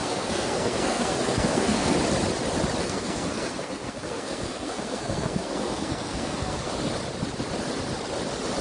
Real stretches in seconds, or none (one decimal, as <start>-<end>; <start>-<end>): 1.9-2.8; 6.7-8.6